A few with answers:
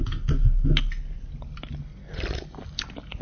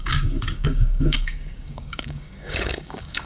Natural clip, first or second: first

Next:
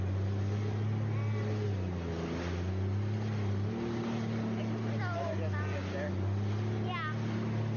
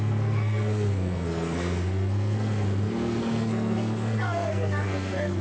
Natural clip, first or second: first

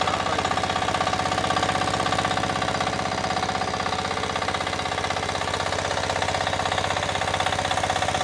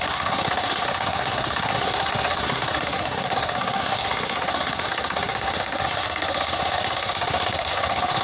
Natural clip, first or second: first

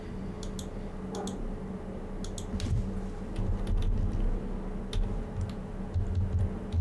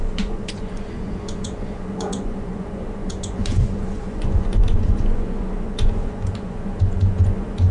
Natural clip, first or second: first